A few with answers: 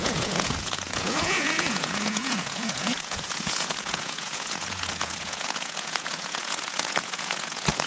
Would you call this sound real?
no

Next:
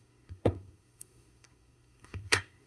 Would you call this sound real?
no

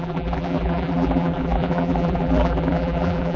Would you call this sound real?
no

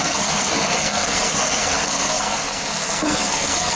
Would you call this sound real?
no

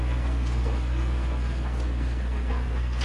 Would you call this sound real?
no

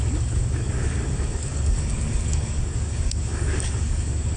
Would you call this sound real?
no